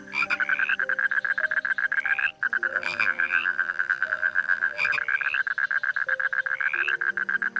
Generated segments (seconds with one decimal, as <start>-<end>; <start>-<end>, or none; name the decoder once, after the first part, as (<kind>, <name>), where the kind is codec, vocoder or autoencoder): 2.7-4.8 (vocoder, BigVGAN v2)